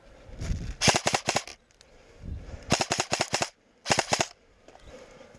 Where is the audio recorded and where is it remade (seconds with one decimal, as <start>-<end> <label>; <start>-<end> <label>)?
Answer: 0.0-5.4 recorded